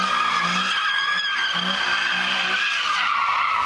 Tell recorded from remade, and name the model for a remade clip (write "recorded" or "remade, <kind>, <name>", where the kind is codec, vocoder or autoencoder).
recorded